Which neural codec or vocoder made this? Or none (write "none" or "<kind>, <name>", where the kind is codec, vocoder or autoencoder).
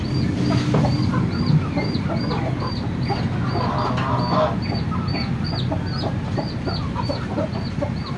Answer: none